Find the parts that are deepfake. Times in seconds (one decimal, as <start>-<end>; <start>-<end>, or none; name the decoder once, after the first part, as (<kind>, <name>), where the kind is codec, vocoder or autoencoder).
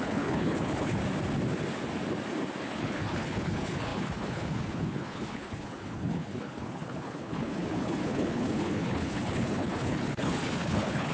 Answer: 0.0-1.0 (codec, HILCodec); 2.6-11.1